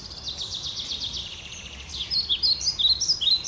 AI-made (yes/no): no